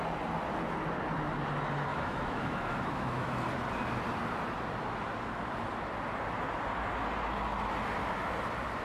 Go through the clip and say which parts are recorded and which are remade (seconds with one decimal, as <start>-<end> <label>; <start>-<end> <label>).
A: 0.0-1.9 recorded; 1.9-3.3 remade; 3.3-8.8 recorded